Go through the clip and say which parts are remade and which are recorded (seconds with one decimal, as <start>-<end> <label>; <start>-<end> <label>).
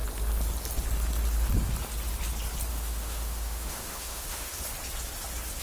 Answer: 0.0-2.7 recorded; 2.7-4.6 remade; 4.6-5.6 recorded